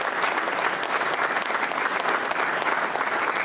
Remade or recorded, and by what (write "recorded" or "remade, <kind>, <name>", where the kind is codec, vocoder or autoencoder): recorded